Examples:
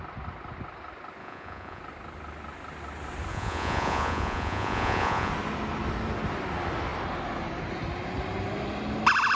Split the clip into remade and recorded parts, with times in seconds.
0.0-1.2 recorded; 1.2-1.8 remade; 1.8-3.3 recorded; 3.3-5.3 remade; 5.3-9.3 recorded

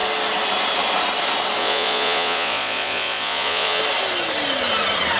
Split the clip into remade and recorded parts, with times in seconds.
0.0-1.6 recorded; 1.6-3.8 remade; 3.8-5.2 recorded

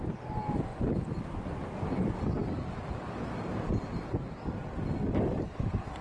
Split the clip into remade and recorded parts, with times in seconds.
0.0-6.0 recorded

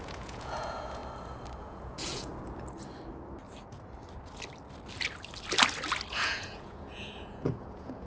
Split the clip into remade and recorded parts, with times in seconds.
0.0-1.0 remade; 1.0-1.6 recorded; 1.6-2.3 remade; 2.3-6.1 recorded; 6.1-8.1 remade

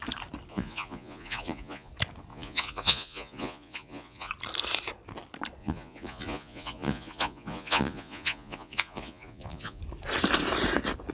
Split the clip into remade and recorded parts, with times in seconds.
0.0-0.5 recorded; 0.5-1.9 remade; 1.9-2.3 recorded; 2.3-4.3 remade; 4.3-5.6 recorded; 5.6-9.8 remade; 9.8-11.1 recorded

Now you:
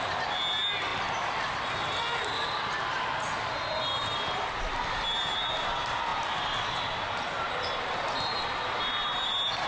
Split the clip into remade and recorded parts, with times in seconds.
0.0-9.7 recorded

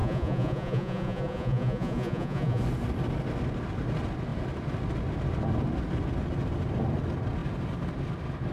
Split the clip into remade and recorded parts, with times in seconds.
0.0-2.6 remade; 2.6-8.5 recorded

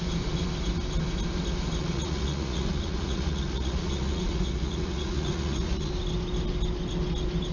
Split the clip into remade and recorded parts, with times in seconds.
0.0-1.8 recorded; 1.8-5.9 remade; 5.9-7.5 recorded